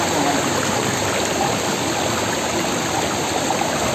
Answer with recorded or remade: recorded